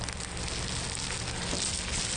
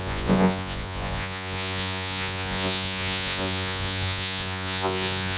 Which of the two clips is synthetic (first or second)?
second